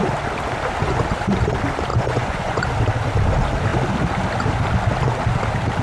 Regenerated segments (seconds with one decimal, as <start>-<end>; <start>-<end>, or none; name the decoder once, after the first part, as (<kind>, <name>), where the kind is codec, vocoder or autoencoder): 1.9-2.6 (vocoder, Vocos)